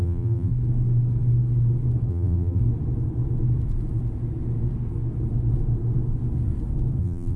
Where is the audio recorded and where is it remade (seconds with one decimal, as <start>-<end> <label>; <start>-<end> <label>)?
0.0-0.5 remade; 0.5-2.1 recorded; 2.1-2.6 remade; 2.6-7.0 recorded; 7.0-7.4 remade